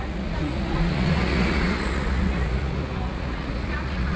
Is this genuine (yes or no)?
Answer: no